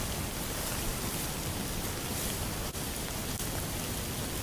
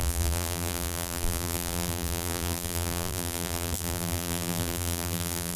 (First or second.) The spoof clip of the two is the second